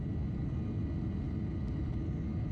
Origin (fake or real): real